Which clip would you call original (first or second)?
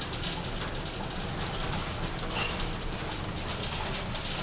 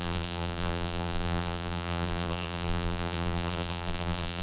first